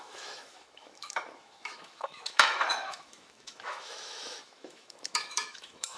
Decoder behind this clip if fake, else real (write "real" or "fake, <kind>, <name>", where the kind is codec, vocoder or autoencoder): fake, autoencoder, DAC-VAE